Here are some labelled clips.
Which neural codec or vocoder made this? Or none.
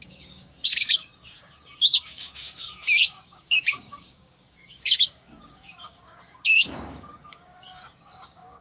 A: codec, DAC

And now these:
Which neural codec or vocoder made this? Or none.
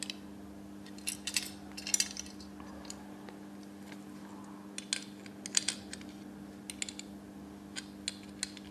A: none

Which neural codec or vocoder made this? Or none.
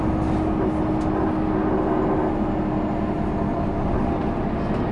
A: none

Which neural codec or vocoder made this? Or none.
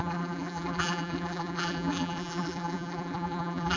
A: vocoder, BigVGAN v2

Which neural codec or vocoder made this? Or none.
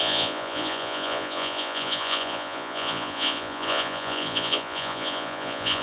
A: vocoder, Vocos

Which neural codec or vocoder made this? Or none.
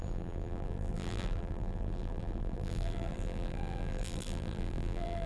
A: vocoder, BigVGAN v2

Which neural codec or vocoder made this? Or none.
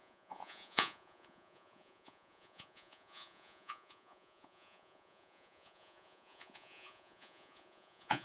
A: vocoder, Vocos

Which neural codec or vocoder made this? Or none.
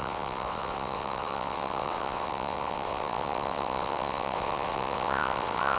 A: vocoder, WaveNeXt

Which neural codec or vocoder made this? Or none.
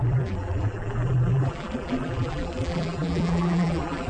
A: vocoder, BigVGAN v2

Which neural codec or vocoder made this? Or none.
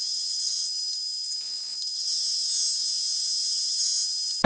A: none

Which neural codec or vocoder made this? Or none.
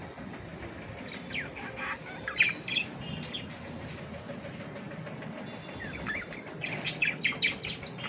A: none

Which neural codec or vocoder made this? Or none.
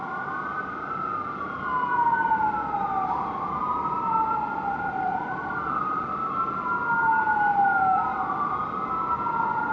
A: none